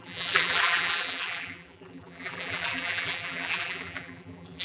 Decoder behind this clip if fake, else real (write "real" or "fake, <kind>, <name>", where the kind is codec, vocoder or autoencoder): fake, vocoder, BigVGAN v2